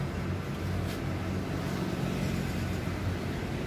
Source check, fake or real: real